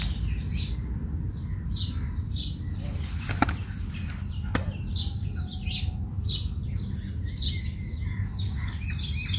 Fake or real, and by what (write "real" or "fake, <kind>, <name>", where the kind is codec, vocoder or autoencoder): real